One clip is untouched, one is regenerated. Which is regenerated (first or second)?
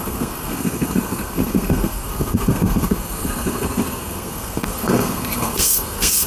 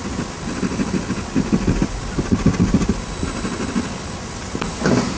first